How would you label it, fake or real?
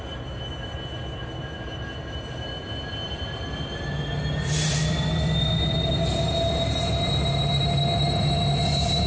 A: real